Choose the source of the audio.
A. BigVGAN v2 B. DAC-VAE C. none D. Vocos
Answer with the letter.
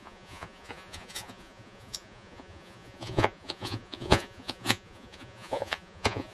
D